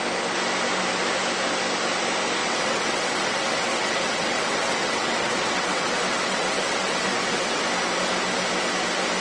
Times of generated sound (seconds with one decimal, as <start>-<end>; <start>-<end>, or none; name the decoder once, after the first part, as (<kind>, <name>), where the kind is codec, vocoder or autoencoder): 2.4-7.6 (vocoder, WaveNeXt)